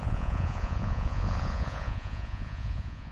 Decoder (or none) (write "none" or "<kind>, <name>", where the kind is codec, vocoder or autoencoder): vocoder, Vocos